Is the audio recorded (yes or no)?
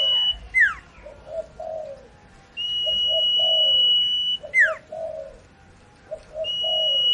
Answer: yes